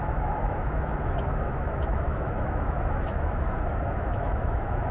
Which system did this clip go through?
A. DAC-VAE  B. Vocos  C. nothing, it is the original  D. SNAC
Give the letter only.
A